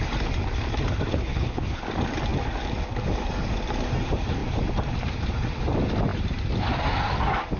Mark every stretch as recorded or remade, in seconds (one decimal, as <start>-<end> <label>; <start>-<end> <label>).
0.0-1.1 recorded; 1.1-1.8 remade; 1.8-7.6 recorded